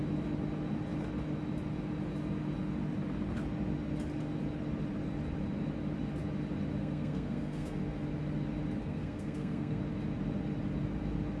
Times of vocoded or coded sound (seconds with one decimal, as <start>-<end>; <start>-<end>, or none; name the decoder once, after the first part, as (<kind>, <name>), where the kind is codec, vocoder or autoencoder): 6.8-7.8 (codec, SNAC); 8.8-9.8